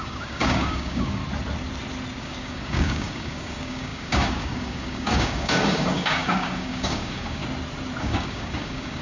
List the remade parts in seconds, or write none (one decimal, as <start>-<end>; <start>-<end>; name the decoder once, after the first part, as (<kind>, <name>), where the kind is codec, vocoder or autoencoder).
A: 0.0-1.2 (codec, DAC); 2.2-7.4; 8.0-9.0